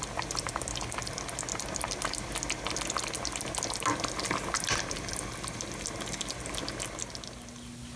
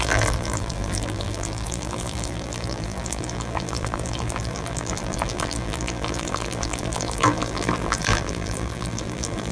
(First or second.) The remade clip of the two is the second